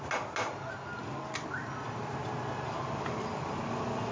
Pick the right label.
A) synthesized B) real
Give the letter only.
B